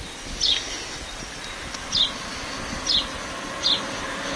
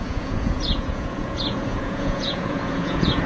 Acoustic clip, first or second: first